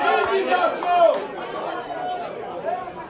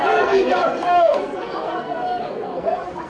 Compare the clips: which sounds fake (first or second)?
second